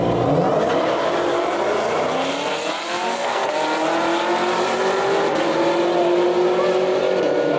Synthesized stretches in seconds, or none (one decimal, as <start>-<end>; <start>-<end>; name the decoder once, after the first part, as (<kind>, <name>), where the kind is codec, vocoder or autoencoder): 2.8-3.5 (codec, SNAC)